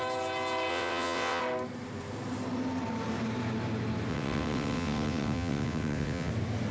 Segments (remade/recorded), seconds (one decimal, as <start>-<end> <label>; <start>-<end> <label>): 0.0-0.7 recorded; 0.7-1.4 remade; 1.4-4.1 recorded; 4.1-6.3 remade; 6.3-6.7 recorded